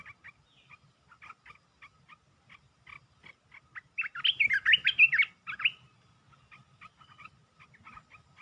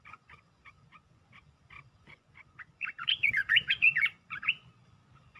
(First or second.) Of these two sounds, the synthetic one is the second